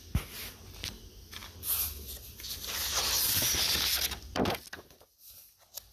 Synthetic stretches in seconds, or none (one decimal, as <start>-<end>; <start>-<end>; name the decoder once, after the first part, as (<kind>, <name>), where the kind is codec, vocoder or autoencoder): none